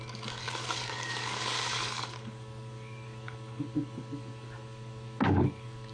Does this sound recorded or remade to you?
remade